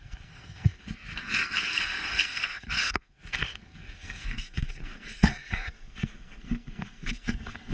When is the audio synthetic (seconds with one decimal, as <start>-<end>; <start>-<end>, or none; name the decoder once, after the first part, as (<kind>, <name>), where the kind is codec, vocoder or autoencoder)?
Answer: 0.0-7.7 (codec, SNAC)